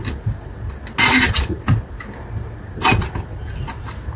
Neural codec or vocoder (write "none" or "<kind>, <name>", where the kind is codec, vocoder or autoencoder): none